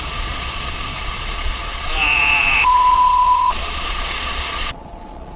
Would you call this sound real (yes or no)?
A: no